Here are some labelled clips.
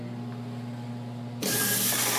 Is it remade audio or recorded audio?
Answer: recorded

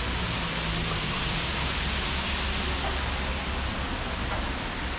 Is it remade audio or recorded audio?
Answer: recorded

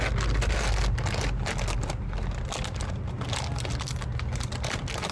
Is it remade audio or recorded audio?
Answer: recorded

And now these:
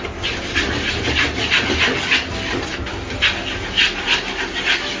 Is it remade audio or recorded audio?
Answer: remade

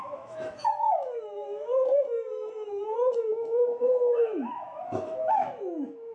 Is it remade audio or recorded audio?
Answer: remade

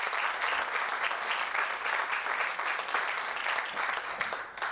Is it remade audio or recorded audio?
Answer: recorded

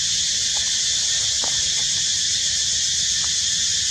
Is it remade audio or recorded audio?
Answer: recorded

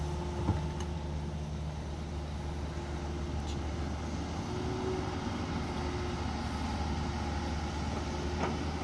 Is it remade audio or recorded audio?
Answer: recorded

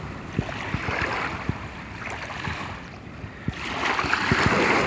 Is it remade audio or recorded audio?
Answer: recorded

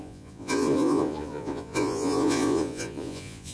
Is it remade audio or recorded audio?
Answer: remade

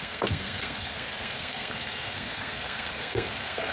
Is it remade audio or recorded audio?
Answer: remade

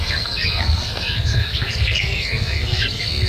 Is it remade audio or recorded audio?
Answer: remade